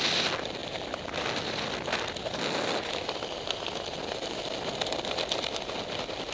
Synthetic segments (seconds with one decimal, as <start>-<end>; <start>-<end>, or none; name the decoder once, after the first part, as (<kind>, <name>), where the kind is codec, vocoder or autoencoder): none